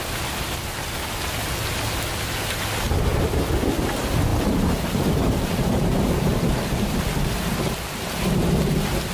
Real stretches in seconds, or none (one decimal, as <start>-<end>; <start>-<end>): 0.0-4.3; 7.0-9.1